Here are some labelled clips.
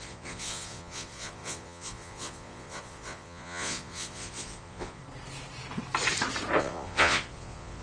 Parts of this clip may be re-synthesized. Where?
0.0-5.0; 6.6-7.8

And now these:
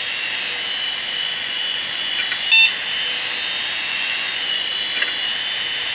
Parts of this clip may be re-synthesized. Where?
1.2-2.1; 3.8-4.7

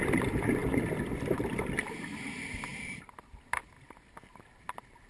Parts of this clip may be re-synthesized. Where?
none

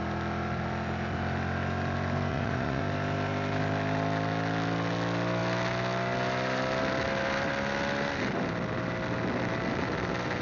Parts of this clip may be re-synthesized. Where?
2.3-2.8